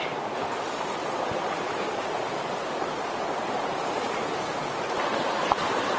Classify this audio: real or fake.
real